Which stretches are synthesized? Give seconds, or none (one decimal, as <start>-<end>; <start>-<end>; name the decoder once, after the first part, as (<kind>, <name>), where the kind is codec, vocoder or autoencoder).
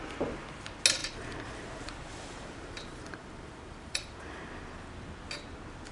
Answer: 1.0-4.5 (vocoder, BigVGAN v2)